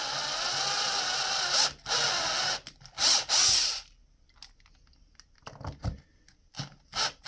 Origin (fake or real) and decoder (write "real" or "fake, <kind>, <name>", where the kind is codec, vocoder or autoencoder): real